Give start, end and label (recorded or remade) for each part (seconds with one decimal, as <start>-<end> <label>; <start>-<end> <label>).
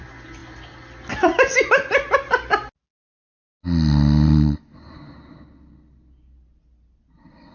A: 0.0-7.5 recorded